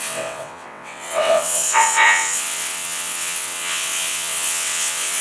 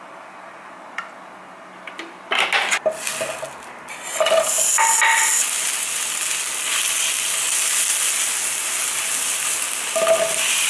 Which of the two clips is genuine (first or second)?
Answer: second